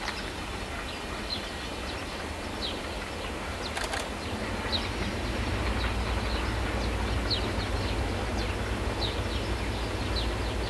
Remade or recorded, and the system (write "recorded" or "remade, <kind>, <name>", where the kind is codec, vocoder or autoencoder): recorded